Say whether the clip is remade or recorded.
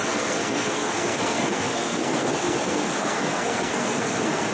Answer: remade